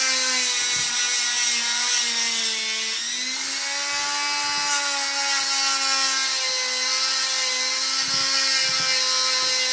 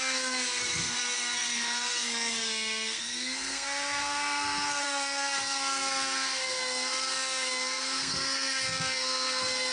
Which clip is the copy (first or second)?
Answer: second